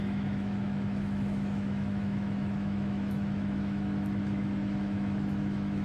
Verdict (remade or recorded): remade